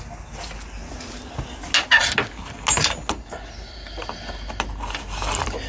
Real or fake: real